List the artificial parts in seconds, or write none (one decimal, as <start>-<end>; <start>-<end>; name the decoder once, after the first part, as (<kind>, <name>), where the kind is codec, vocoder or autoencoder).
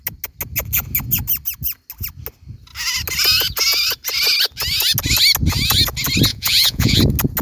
6.3-7.0 (vocoder, Vocos)